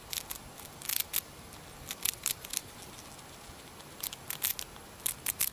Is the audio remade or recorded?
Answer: recorded